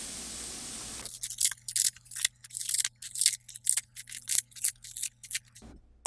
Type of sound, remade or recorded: recorded